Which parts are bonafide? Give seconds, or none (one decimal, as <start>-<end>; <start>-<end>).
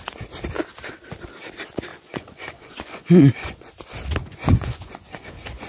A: 0.0-1.9; 3.7-4.2